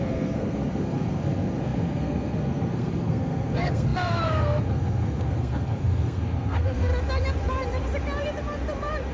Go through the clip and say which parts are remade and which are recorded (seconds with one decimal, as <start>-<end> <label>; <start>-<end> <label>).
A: 0.0-6.9 remade; 6.9-9.1 recorded